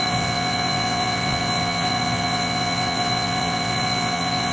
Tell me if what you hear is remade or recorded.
remade